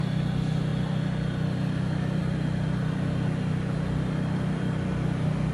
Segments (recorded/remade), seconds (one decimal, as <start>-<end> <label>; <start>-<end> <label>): 0.0-5.5 recorded